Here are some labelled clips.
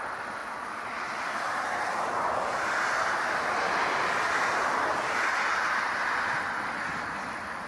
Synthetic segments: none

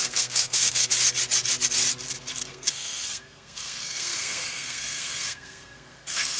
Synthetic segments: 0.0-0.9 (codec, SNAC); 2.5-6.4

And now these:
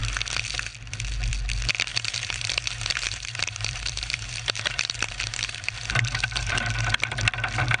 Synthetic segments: 1.9-6.6 (vocoder, BigVGAN v2)

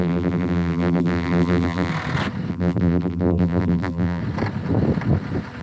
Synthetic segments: 0.0-1.9 (vocoder, BigVGAN v2); 2.5-4.2

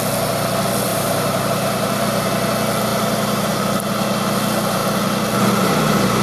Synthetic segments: 0.9-2.0 (vocoder, BigVGAN v2); 2.9-3.6

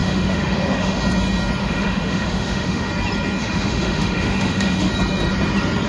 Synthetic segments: 0.0-1.0 (autoencoder, DAC-VAE); 1.6-2.9; 3.4-4.9